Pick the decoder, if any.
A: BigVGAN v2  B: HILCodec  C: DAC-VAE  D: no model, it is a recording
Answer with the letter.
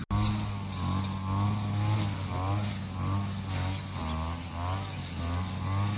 D